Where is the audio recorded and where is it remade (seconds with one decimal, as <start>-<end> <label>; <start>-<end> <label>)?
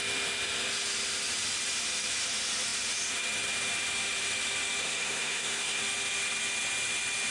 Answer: 0.0-4.8 recorded; 4.8-5.8 remade; 5.8-7.3 recorded